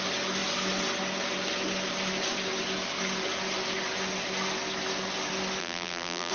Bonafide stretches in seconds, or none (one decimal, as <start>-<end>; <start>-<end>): 0.0-5.6